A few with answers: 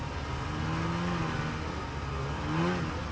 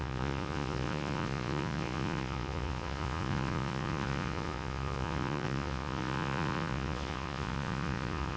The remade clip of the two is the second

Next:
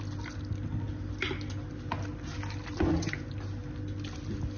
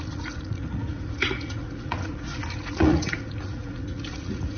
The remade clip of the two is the second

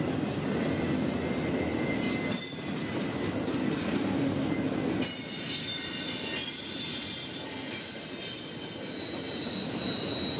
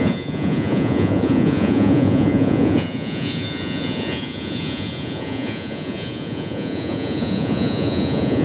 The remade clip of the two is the second